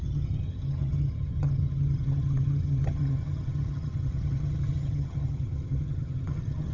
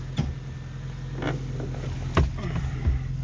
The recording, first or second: second